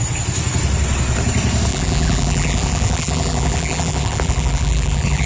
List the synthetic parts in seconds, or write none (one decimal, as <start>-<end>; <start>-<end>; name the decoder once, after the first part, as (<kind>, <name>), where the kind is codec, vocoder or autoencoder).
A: 1.7-5.3 (vocoder, BigVGAN v2)

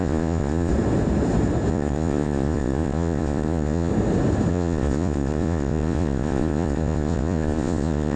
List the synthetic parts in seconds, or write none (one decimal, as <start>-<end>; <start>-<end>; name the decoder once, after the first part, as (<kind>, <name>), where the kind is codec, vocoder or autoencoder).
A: 0.0-0.7 (vocoder, Vocos); 1.7-3.9; 4.5-8.2

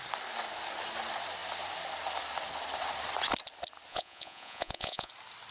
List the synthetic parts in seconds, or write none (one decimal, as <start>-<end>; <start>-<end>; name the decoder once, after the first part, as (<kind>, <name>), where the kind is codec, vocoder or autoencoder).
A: 3.9-5.1 (vocoder, Vocos)